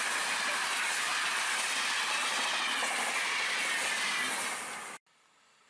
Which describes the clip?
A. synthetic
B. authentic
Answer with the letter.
B